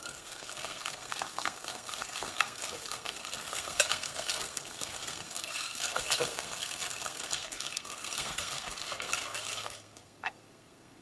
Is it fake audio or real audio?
fake